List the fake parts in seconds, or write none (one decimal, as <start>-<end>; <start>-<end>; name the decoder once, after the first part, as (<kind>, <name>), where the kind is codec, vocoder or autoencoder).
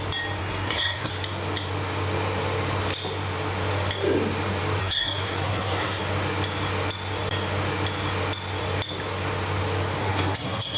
0.4-1.1 (codec, SNAC); 4.8-6.0; 10.0-10.8